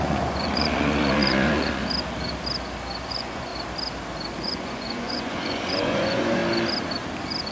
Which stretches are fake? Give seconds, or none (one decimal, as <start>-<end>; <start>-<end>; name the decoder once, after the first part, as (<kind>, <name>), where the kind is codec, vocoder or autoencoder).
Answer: 0.0-1.8 (vocoder, Vocos); 3.1-3.5; 4.4-6.4